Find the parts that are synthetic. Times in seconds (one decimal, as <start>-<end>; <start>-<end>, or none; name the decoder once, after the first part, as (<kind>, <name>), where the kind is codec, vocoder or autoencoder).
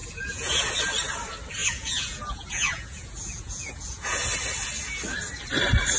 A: 0.0-0.7 (vocoder, Vocos); 1.6-4.3